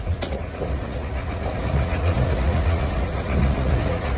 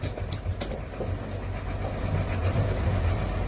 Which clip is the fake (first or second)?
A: first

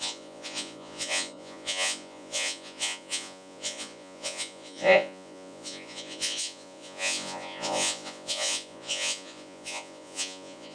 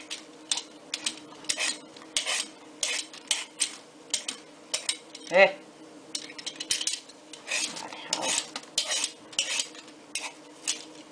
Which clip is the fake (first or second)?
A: first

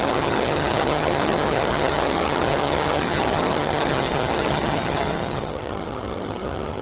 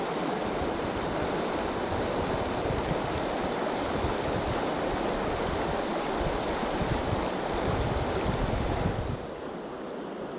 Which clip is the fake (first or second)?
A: first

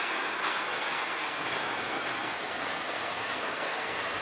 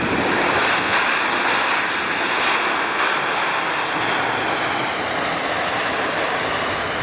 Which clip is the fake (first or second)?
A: first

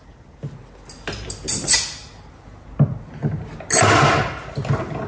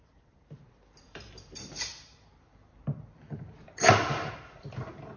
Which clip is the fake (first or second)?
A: second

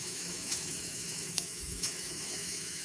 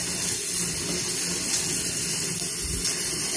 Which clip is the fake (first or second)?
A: first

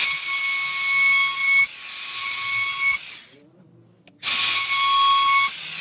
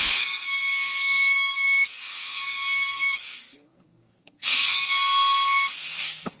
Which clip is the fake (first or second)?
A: second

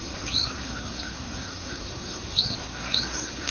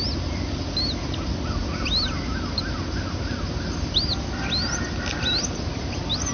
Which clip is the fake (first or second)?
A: first